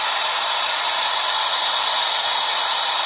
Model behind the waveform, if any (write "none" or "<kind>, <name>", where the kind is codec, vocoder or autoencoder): none